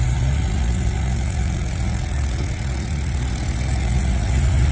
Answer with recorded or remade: remade